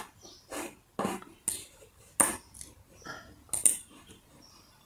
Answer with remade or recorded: recorded